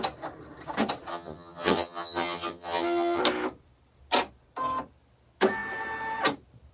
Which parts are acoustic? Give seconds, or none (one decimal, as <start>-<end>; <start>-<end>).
0.0-1.1; 3.2-6.7